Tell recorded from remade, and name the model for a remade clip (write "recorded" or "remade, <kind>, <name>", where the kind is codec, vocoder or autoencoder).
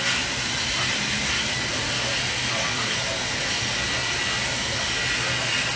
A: recorded